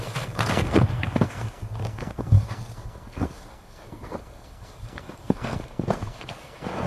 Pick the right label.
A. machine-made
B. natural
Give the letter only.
A